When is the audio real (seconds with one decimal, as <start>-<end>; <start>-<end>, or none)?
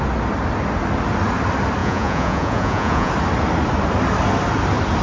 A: 0.0-1.8; 3.1-5.0